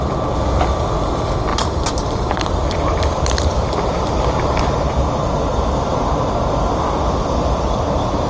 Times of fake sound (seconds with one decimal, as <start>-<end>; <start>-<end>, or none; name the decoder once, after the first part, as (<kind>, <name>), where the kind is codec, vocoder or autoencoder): 1.5-4.7 (vocoder, BigVGAN v2)